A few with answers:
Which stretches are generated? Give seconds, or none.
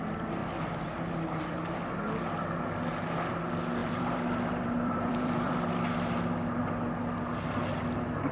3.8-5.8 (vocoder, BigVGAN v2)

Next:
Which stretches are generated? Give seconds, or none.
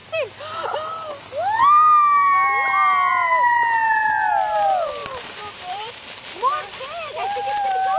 5.0-5.9 (vocoder, BigVGAN v2)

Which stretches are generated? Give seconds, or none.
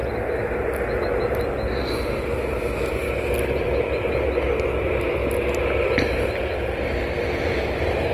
none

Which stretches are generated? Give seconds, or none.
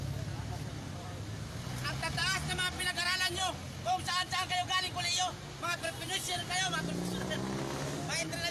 none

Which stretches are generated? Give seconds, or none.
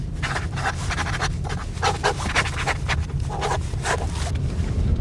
0.0-1.6 (vocoder, BigVGAN v2); 4.6-5.0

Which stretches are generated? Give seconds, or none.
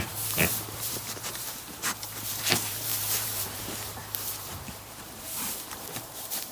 0.0-6.5 (vocoder, BigVGAN v2)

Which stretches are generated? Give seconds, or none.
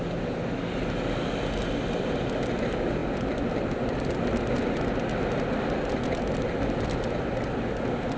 3.0-3.9 (vocoder, BigVGAN v2)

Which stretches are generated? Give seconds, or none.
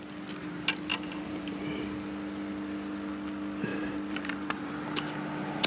0.9-1.6 (vocoder, BigVGAN v2); 3.7-4.7